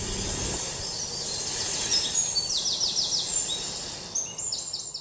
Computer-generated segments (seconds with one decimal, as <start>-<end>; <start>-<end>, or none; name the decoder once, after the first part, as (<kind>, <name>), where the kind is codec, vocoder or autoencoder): none